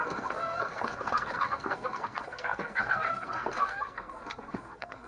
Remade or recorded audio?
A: remade